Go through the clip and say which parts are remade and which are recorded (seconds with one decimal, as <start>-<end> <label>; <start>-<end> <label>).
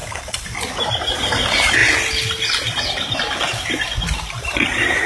0.0-0.9 recorded; 0.9-1.8 remade; 1.8-4.2 recorded; 4.2-5.1 remade